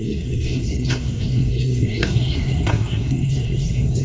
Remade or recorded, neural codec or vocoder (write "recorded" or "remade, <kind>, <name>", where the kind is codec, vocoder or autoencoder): remade, codec, SNAC